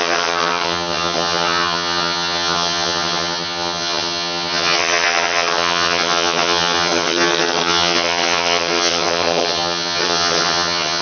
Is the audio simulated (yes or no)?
yes